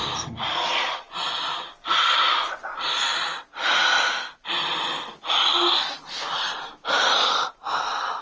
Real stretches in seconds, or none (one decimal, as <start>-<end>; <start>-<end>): 0.0-8.2